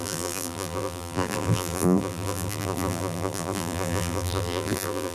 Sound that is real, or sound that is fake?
fake